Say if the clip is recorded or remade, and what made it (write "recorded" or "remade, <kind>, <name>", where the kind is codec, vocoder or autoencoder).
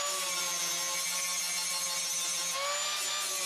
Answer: recorded